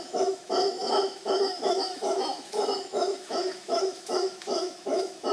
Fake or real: fake